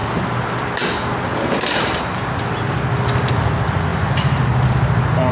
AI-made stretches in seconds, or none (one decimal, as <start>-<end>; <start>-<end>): 1.3-2.0; 3.9-4.7